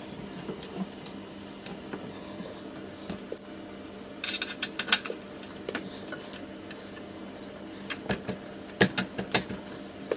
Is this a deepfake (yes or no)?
no